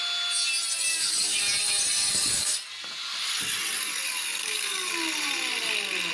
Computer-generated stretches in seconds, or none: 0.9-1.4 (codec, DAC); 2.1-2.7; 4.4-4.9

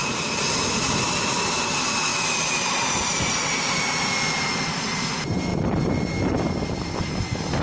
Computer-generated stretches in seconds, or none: none

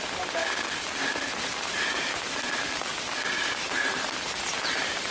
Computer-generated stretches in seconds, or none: 0.0-0.4 (vocoder, BigVGAN v2); 1.3-2.9; 3.6-5.1

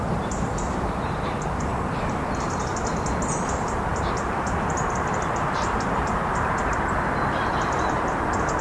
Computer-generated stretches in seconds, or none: 0.0-8.6 (vocoder, BigVGAN v2)

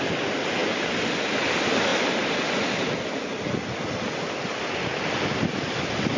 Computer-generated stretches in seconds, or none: none

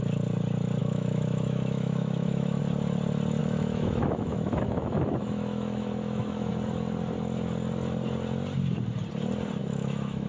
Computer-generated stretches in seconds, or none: 0.8-2.6 (autoencoder, DAC-VAE); 3.4-6.5; 9.6-10.3

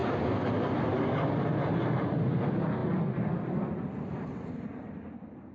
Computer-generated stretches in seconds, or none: none